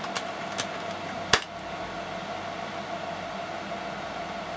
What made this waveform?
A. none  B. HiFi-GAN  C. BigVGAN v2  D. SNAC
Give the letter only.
A